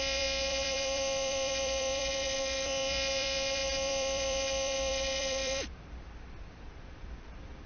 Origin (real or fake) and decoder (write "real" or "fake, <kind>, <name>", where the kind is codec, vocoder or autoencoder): fake, vocoder, BigVGAN v2